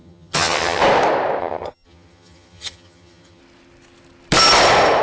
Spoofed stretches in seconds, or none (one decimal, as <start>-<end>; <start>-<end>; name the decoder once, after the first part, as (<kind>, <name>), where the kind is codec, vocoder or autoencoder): 0.0-0.8 (vocoder, HiFi-GAN); 1.4-3.4